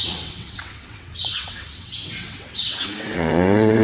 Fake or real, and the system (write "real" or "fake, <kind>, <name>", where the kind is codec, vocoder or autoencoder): fake, vocoder, WaveNeXt